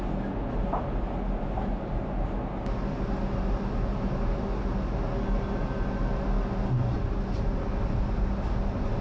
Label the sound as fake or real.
real